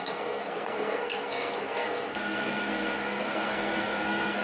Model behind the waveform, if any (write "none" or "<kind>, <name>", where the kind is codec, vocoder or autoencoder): codec, SNAC